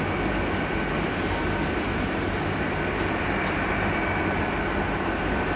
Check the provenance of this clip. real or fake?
real